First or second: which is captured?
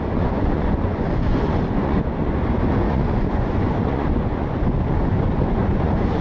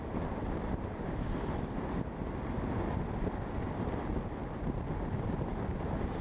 second